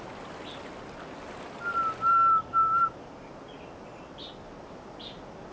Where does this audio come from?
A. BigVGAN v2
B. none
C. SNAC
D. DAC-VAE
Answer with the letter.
B